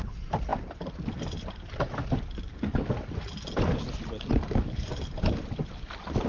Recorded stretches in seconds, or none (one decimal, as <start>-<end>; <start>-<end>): 0.0-6.3

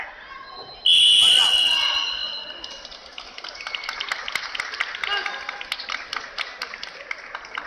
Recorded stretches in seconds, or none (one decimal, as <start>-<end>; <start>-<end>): 0.0-7.7

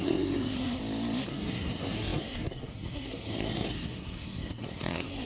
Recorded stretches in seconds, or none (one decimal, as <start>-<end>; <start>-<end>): 0.8-1.3

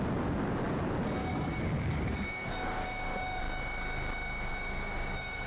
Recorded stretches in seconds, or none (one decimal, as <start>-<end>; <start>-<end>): 0.0-1.2; 3.4-4.5

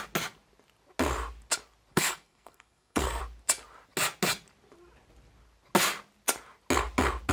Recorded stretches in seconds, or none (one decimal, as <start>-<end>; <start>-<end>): 0.0-1.9; 3.2-7.3